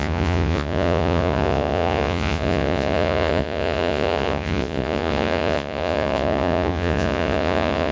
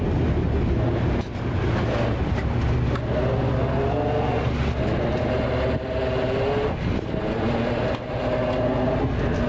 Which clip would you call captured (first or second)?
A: second